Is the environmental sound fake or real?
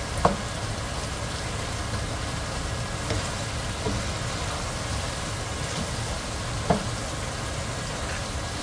real